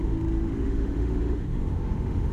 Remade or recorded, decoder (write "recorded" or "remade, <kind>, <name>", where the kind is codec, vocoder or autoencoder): remade, autoencoder, DAC-VAE